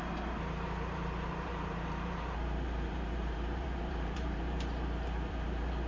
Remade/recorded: remade